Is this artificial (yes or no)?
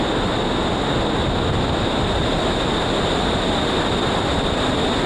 no